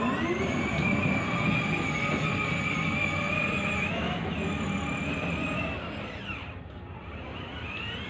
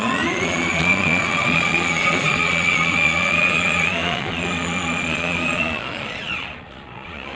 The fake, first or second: second